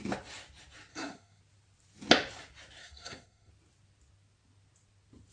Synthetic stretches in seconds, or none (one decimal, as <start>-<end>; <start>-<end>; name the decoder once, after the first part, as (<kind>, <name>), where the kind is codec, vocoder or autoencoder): 0.9-1.4 (codec, SNAC); 2.8-3.5